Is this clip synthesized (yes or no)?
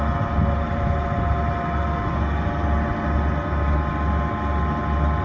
no